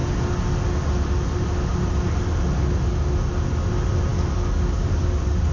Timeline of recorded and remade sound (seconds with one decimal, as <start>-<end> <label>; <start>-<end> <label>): 0.0-4.1 recorded; 4.1-5.5 remade